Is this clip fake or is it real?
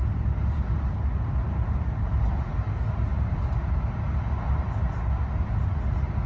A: real